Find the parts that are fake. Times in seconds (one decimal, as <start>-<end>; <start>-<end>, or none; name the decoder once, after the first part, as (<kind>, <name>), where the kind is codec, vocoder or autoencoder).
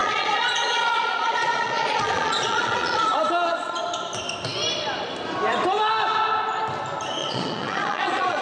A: 0.0-3.8 (vocoder, Vocos); 7.2-8.4